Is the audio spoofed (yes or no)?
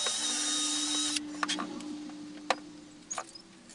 no